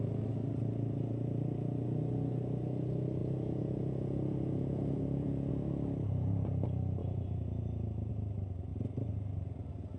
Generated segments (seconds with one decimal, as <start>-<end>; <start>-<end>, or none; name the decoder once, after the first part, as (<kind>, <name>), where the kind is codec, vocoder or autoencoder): 3.2-5.5 (vocoder, Vocos); 7.0-8.1